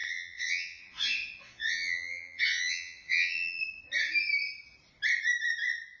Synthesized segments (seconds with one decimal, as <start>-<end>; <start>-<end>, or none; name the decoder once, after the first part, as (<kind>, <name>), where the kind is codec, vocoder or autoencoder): 0.0-3.6 (vocoder, Vocos)

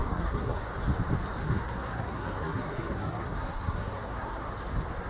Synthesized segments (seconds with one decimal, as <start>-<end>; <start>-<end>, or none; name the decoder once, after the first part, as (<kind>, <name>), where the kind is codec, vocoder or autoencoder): 0.0-0.6 (codec, SNAC); 1.4-4.5

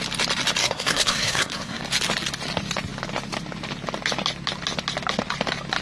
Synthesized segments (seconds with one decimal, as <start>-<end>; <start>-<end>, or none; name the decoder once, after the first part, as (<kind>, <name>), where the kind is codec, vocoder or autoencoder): 0.6-1.8 (codec, SNAC)

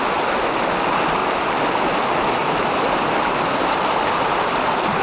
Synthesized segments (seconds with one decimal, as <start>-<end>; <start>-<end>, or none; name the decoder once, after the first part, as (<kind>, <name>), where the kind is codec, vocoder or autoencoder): none

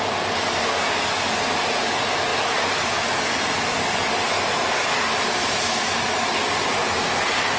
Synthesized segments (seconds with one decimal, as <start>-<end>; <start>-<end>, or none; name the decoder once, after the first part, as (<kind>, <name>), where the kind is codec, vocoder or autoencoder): none

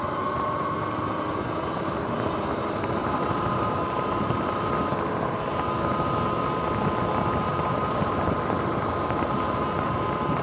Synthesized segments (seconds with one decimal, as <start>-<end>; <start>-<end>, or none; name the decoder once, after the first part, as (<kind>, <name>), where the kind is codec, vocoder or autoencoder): 3.0-4.6 (vocoder, BigVGAN v2)